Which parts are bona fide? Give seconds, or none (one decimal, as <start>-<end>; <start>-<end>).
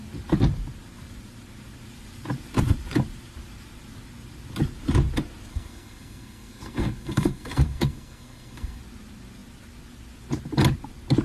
0.0-5.5; 8.8-11.2